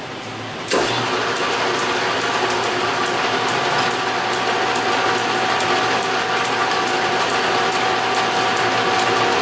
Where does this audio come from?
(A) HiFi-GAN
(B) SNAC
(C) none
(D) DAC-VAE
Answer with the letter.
C